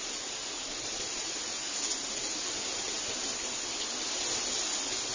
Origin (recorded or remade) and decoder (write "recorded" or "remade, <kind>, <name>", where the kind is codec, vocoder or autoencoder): recorded